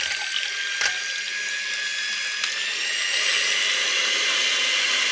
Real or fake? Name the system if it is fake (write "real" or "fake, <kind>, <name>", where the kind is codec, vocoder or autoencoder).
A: real